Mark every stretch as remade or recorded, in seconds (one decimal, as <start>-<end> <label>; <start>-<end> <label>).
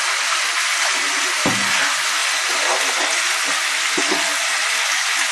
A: 0.0-5.3 recorded